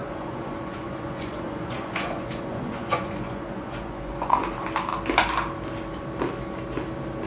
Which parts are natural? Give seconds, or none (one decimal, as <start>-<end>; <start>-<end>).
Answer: 4.4-7.3

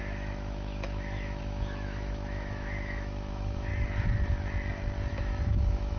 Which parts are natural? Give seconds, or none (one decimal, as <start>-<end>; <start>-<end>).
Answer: 3.7-5.1

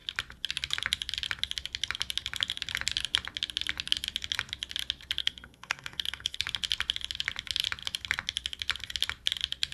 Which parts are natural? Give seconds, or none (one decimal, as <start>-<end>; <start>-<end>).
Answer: 0.0-5.2; 6.4-9.7

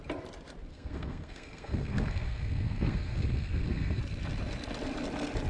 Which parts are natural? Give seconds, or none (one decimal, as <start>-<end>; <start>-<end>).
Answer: 0.0-0.7; 4.0-5.5